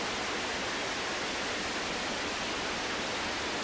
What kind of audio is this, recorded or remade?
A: recorded